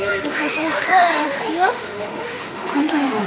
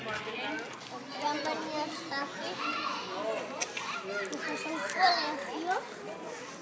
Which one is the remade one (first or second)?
first